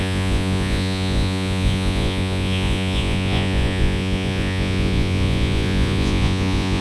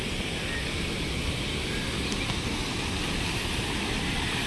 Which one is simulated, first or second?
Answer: first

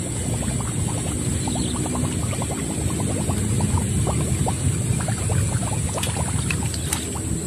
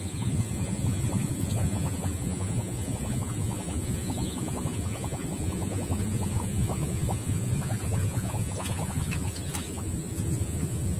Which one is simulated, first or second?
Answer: second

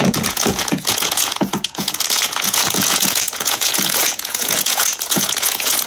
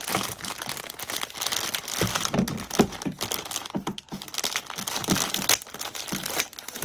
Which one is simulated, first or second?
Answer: first